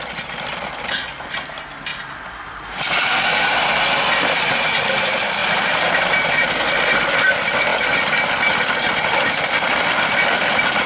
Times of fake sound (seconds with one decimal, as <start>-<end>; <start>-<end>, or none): 1.9-3.2; 5.4-6.5